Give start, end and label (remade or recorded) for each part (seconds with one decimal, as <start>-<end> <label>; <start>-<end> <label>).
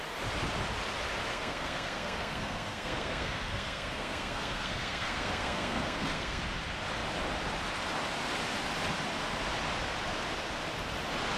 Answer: 0.0-1.3 recorded; 1.3-6.4 remade; 6.4-11.4 recorded